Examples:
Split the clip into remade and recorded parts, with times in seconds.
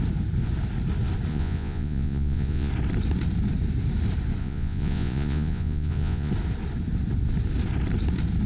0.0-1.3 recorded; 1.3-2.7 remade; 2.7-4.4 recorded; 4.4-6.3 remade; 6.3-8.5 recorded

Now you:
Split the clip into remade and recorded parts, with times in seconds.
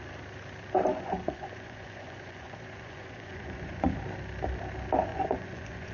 0.0-0.9 recorded; 0.9-4.0 remade; 4.0-5.1 recorded; 5.1-5.9 remade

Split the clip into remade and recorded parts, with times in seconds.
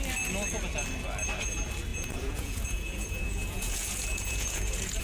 0.0-1.9 recorded; 1.9-5.0 remade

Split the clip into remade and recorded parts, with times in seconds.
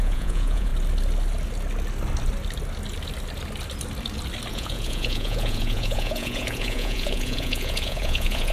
0.0-0.7 remade; 0.7-4.5 recorded; 4.5-8.5 remade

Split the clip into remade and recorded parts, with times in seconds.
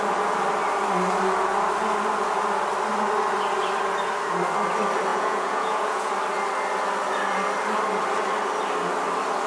0.0-5.1 recorded; 5.1-6.1 remade; 6.1-9.5 recorded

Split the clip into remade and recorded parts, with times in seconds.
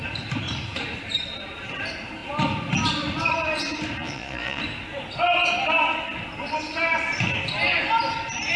0.0-4.0 recorded; 4.0-4.6 remade; 4.6-8.6 recorded